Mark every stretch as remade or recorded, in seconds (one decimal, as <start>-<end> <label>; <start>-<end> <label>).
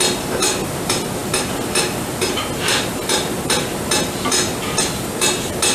0.0-5.7 recorded